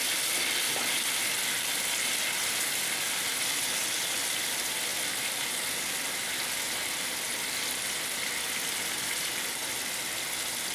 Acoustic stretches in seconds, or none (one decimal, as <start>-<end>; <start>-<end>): 0.0-10.7